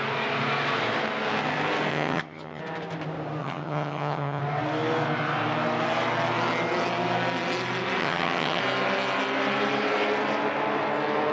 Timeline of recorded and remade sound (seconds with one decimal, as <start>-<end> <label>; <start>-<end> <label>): 0.0-1.9 recorded; 1.9-2.6 remade; 2.6-3.4 recorded; 3.4-4.4 remade; 4.4-8.0 recorded; 8.0-8.6 remade; 8.6-11.3 recorded